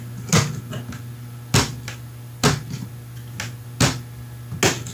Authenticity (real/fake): real